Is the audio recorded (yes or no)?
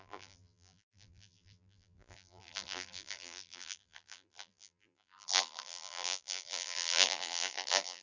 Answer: no